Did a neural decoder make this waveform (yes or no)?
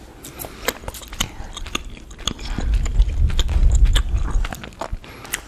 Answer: no